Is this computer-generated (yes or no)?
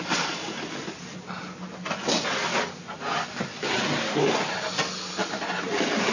no